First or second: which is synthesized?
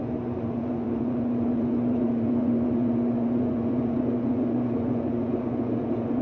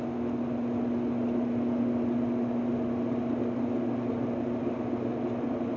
first